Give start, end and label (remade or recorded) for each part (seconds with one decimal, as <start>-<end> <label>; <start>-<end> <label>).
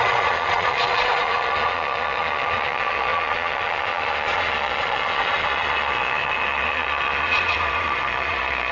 0.0-8.7 remade